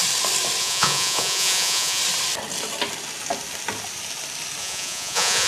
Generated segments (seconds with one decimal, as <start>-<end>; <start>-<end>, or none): 0.6-2.0; 4.6-5.5